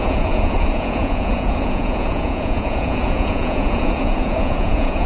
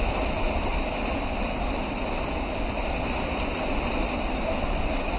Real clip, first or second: second